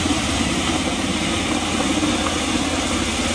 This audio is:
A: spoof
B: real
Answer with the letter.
B